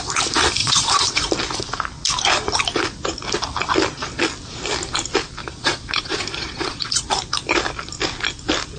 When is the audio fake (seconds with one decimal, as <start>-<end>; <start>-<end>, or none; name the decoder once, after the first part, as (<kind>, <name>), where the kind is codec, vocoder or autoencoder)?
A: 0.6-1.3 (vocoder, Vocos); 5.4-7.1